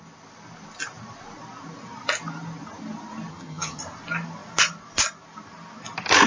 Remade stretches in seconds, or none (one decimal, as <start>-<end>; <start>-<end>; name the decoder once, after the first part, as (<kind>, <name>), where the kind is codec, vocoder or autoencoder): 3.3-3.8 (vocoder, HiFi-GAN)